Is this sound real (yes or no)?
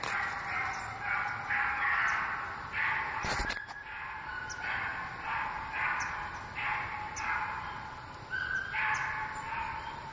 yes